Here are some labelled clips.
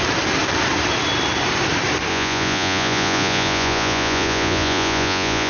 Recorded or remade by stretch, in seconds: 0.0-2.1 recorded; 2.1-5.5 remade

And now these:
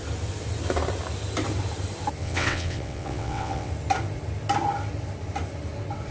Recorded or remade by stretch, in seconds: 0.0-2.2 recorded; 2.2-3.7 remade; 3.7-6.1 recorded